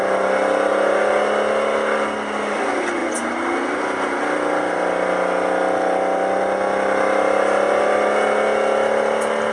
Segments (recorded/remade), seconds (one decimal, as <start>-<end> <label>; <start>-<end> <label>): 0.0-9.5 recorded